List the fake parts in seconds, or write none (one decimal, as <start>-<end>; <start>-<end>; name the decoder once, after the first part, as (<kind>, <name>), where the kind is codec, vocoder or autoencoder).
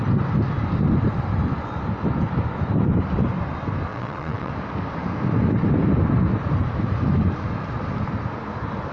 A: 3.9-4.5 (vocoder, WaveNeXt)